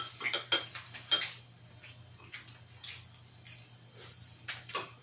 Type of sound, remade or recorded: recorded